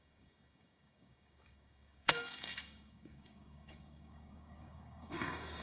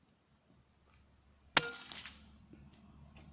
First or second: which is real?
second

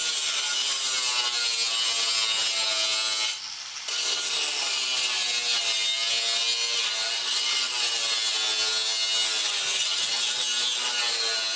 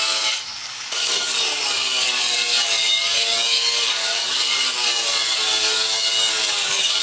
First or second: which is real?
first